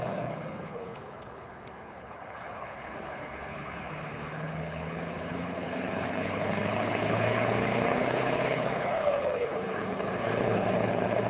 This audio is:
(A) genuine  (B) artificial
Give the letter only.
B